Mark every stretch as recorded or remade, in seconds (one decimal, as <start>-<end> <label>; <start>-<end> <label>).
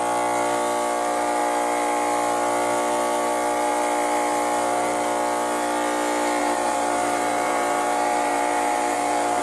0.0-6.4 recorded; 6.4-9.4 remade